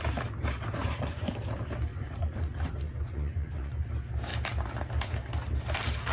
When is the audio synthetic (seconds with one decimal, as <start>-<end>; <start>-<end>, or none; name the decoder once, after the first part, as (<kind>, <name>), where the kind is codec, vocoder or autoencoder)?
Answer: 0.8-1.3 (vocoder, Vocos); 1.9-3.9